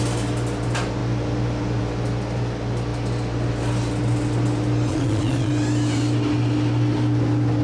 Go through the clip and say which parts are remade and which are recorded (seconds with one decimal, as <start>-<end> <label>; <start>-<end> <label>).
0.0-4.9 recorded; 4.9-5.5 remade; 5.5-7.6 recorded